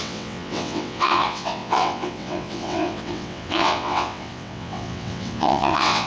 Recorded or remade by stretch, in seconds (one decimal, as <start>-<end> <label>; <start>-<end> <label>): 0.0-6.1 remade